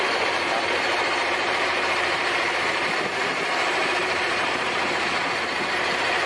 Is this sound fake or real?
fake